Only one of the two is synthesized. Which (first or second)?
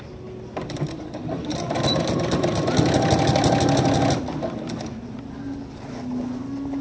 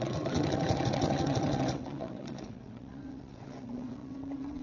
second